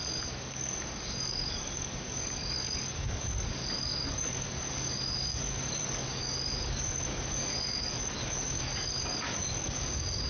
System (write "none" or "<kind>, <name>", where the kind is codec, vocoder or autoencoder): codec, DAC